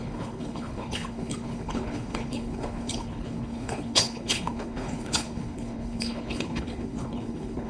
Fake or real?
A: fake